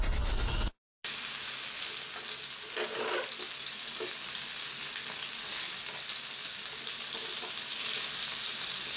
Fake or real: real